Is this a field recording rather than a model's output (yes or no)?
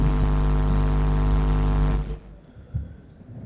yes